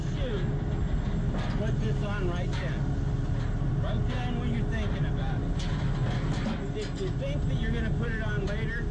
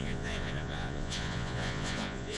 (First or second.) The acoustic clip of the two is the first